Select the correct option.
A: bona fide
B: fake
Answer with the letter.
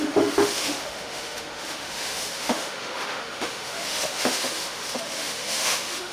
B